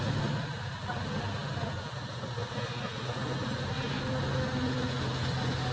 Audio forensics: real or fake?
real